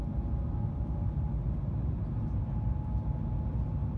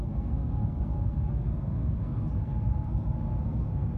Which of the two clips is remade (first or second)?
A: second